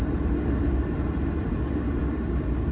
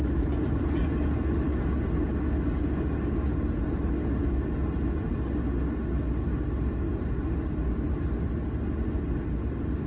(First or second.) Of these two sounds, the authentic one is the second